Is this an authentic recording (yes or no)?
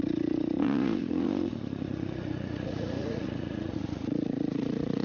no